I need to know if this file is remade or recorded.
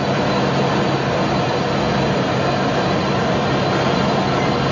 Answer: recorded